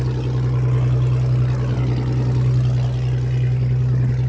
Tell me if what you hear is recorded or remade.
recorded